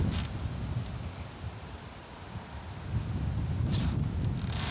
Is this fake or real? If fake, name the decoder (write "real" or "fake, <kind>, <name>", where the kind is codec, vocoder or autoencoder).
real